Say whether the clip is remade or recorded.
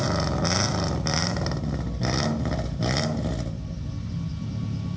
recorded